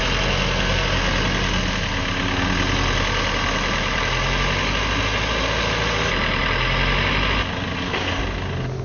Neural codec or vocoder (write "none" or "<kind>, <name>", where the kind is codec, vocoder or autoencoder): none